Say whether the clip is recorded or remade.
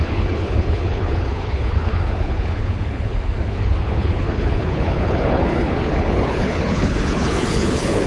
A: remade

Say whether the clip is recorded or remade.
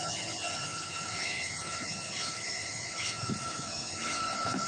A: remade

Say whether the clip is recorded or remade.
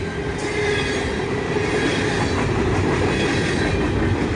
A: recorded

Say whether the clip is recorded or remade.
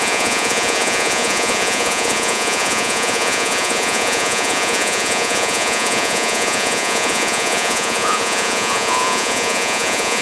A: remade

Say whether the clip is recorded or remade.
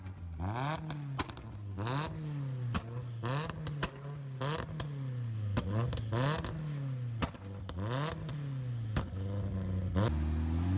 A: recorded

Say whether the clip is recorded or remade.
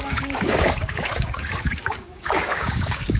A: remade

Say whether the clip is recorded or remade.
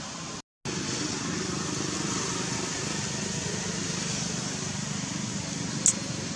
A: recorded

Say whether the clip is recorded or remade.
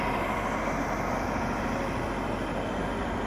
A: recorded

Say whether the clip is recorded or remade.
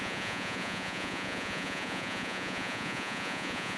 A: remade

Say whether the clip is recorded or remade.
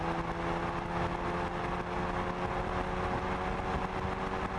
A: recorded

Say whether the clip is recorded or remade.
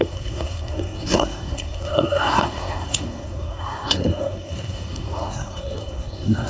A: remade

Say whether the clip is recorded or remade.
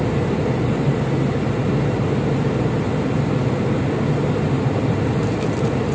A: recorded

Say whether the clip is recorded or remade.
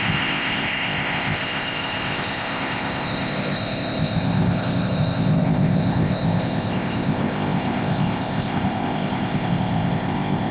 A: remade